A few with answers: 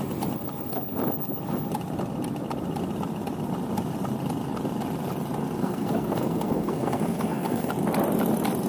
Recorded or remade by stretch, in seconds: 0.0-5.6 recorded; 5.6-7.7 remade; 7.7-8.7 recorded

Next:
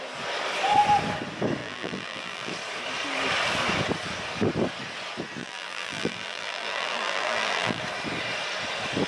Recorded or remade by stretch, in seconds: 0.0-1.6 recorded; 1.6-2.5 remade; 2.5-5.4 recorded; 5.4-7.8 remade; 7.8-9.1 recorded

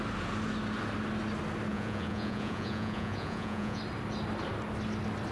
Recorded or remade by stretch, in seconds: 0.0-1.7 recorded; 1.7-3.8 remade; 3.8-5.3 recorded

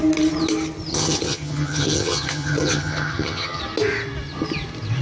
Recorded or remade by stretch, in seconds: 0.0-0.9 recorded; 0.9-3.6 remade; 3.6-5.0 recorded

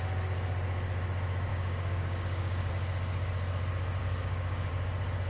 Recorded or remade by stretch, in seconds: 0.0-1.5 recorded; 1.5-2.7 remade; 2.7-4.0 recorded; 4.0-4.7 remade; 4.7-5.3 recorded